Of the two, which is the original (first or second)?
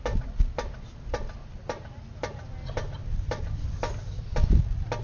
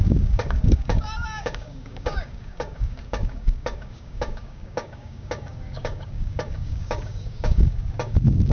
first